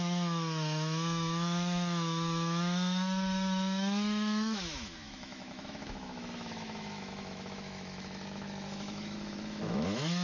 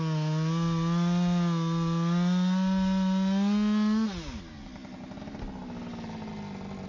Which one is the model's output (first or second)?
first